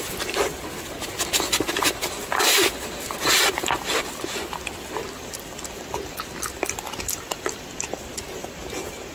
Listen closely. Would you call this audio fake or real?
fake